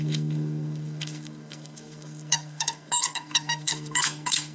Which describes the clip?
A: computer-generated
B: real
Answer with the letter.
A